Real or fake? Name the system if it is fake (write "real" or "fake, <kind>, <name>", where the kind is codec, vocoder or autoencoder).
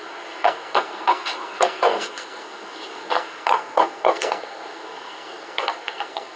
fake, codec, SNAC